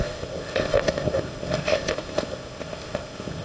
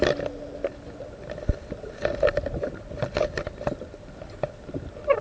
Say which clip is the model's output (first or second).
first